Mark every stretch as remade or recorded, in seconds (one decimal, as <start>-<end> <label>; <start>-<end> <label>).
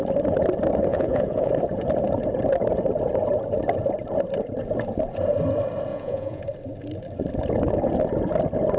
0.0-0.9 recorded; 0.9-1.5 remade; 1.5-5.9 recorded; 5.9-6.4 remade; 6.4-8.8 recorded